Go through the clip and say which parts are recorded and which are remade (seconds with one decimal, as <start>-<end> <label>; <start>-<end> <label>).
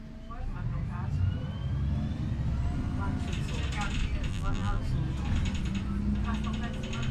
0.0-4.3 recorded; 4.3-4.8 remade; 4.8-7.1 recorded